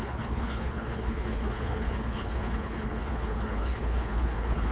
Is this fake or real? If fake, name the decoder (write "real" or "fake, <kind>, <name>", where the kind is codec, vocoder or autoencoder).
fake, codec, HILCodec